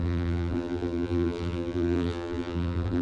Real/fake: fake